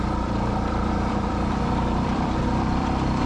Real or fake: fake